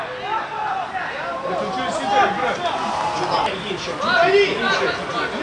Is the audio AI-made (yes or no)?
no